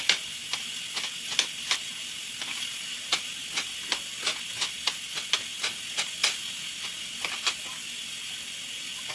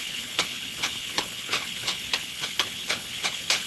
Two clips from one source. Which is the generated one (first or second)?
second